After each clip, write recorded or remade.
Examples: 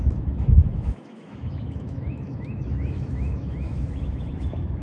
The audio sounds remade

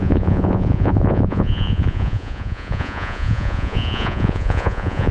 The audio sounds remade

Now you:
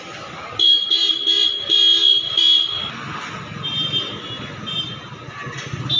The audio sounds recorded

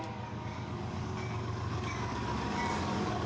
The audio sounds remade